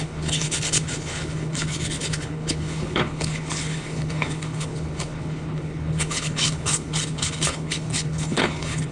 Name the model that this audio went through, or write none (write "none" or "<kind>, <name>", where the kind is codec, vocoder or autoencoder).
codec, HILCodec